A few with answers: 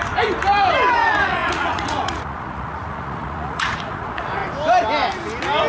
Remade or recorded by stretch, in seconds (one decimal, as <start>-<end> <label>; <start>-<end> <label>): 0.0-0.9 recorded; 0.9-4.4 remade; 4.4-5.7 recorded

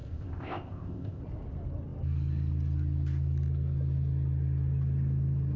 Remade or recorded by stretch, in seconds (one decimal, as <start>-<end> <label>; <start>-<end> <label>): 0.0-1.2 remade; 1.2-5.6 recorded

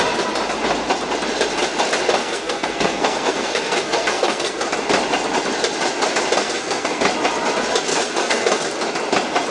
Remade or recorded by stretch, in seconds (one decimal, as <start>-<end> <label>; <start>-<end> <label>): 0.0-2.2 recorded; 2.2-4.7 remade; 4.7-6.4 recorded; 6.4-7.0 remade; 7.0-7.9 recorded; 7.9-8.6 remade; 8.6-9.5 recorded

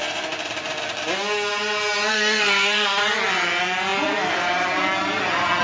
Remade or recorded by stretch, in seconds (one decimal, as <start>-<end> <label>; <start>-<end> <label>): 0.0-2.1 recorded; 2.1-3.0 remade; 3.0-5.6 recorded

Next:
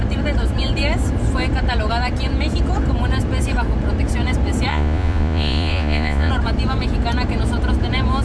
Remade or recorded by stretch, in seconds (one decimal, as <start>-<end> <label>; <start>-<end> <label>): 0.0-4.7 recorded; 4.7-6.3 remade; 6.3-8.2 recorded

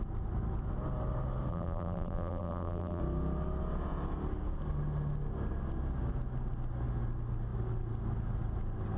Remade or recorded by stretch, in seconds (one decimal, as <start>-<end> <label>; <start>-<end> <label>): 0.0-1.5 recorded; 1.5-3.0 remade; 3.0-9.0 recorded

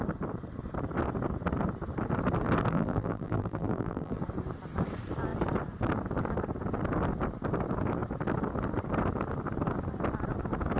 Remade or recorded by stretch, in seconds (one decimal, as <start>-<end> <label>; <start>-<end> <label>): 0.0-2.7 recorded; 2.7-4.2 remade; 4.2-10.8 recorded